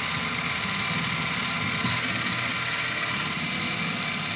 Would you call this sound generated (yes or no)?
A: no